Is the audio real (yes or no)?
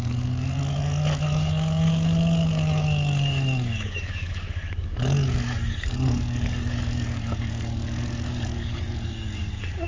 no